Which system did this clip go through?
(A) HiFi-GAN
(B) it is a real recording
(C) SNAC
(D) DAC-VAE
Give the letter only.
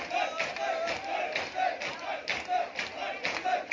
B